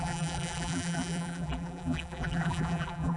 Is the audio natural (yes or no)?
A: no